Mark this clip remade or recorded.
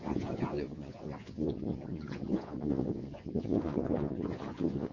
remade